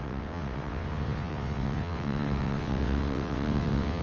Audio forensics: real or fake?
fake